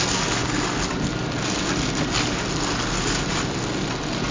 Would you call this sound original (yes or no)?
yes